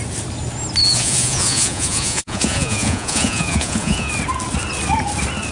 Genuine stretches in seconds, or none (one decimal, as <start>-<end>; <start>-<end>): 0.0-0.8; 4.1-5.5